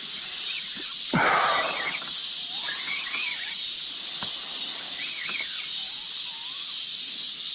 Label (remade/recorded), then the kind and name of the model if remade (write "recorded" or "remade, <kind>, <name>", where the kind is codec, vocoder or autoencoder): recorded